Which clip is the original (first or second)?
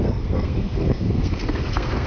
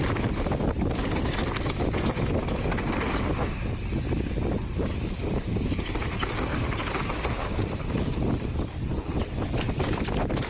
second